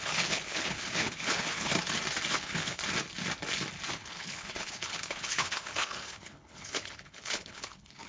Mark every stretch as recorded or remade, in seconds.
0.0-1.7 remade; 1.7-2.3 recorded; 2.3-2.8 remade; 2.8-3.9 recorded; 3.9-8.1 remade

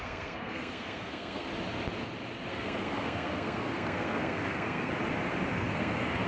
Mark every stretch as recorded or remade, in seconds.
0.0-1.5 remade; 1.5-2.5 recorded; 2.5-4.9 remade; 4.9-5.5 recorded; 5.5-6.3 remade

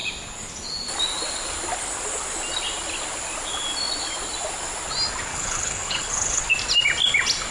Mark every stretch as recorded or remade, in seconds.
0.0-5.3 recorded; 5.3-6.4 remade; 6.4-7.5 recorded